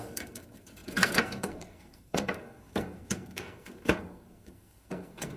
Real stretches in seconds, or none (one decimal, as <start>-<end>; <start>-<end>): none